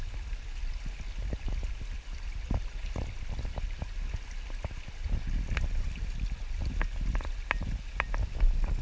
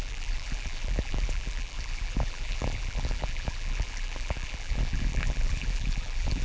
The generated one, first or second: second